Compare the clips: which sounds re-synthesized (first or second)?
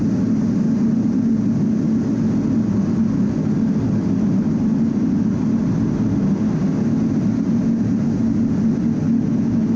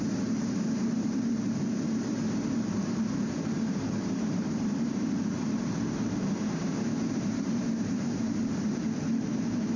second